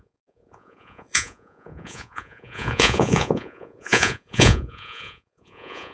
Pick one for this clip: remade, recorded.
remade